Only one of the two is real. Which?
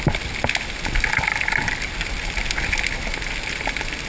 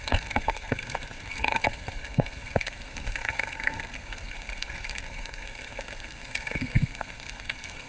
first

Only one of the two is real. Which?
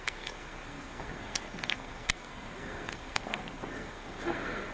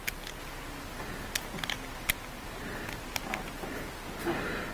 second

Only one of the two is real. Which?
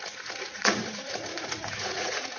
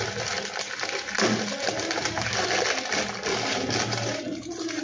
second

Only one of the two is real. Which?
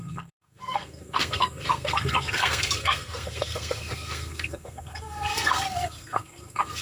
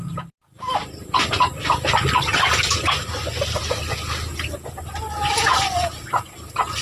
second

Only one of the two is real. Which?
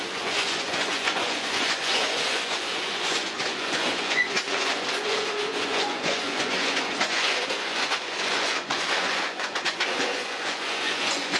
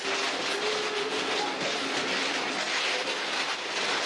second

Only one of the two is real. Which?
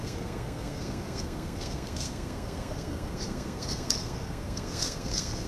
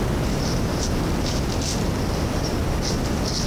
second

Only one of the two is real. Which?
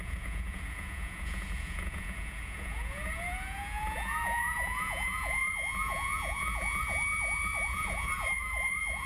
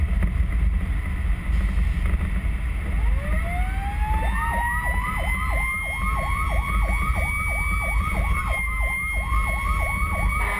second